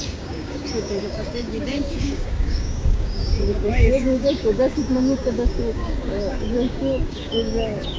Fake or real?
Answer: fake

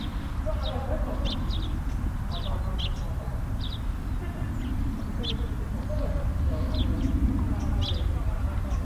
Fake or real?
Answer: real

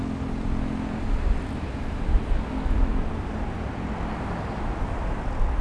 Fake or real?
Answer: real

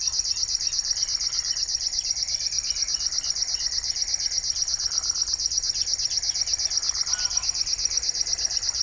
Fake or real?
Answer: real